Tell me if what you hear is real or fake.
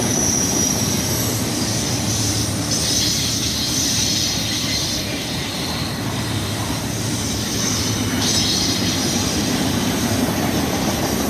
fake